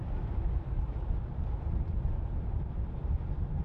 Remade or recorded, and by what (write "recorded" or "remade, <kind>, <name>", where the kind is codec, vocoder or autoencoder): remade, vocoder, BigVGAN v2